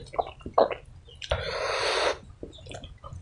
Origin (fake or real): real